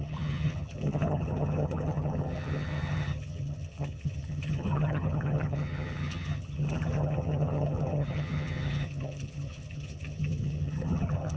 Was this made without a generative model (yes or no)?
no